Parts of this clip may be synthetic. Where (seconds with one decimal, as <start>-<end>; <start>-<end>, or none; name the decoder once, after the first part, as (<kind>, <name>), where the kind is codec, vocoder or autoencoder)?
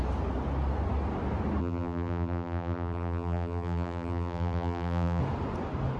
1.6-5.2 (vocoder, BigVGAN v2)